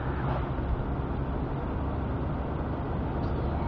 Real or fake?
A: real